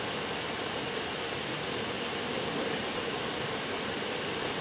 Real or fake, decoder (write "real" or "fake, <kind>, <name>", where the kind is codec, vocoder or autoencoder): real